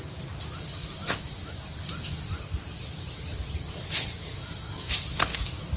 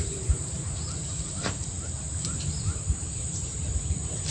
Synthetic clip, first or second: second